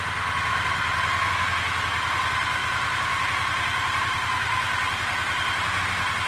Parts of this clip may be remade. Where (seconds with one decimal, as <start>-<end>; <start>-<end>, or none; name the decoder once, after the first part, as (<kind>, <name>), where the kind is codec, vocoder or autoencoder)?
0.5-1.3 (vocoder, BigVGAN v2); 2.6-5.8